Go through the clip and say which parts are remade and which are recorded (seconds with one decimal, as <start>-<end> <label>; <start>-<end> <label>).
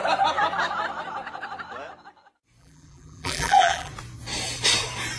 0.0-2.6 recorded; 2.6-3.9 remade; 3.9-5.2 recorded